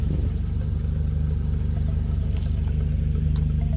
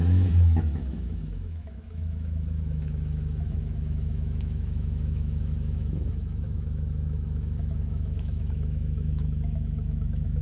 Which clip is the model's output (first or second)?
second